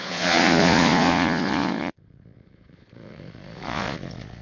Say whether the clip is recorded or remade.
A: remade